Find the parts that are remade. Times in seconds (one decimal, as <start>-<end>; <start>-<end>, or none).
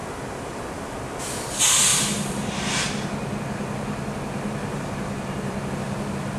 none